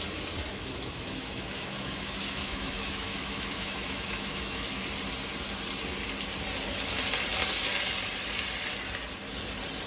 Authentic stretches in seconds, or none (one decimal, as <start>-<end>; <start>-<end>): 0.0-0.5; 4.8-9.9